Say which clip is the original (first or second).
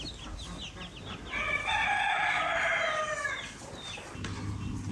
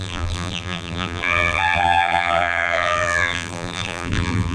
first